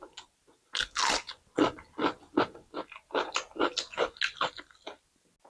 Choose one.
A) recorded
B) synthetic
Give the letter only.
A